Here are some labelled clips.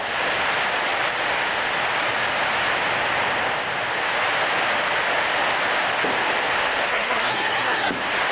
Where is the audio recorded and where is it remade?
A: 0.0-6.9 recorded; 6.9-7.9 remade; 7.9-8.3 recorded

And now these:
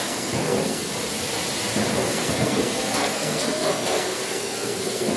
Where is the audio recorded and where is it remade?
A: 0.0-0.9 remade; 0.9-1.9 recorded; 1.9-5.2 remade